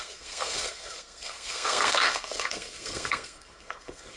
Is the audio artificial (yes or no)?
yes